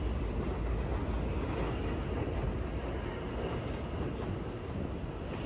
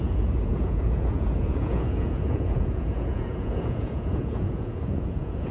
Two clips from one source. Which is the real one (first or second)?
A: first